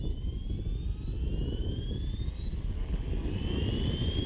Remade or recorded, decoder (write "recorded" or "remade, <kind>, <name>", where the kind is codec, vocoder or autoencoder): recorded